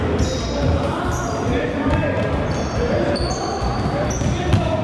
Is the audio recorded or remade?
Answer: recorded